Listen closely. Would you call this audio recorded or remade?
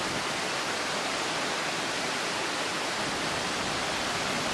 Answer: recorded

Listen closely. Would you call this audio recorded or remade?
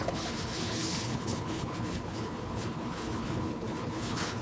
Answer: remade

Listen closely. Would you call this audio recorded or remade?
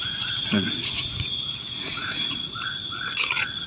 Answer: remade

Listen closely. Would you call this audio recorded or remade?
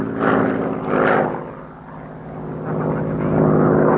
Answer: recorded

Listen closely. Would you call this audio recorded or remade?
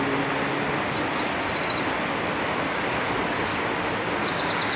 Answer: recorded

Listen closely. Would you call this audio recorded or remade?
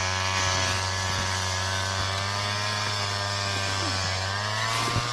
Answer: recorded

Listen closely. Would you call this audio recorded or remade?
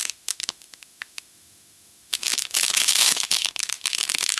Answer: remade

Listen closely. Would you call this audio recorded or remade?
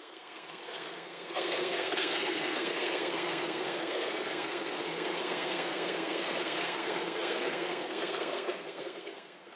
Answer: remade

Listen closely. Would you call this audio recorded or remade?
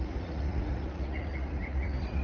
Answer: remade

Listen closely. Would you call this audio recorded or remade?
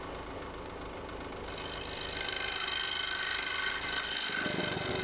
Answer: recorded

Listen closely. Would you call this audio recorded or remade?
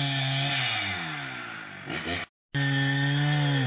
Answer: recorded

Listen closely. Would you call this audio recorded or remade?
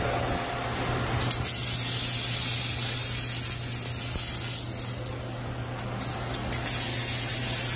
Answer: recorded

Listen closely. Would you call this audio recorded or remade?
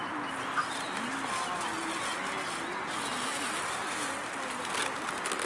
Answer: recorded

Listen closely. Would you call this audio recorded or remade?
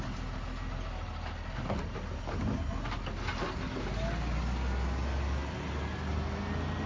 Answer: recorded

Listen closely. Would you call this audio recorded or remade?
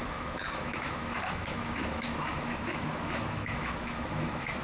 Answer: remade